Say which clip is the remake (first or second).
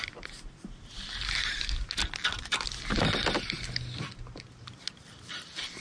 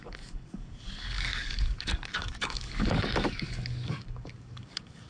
second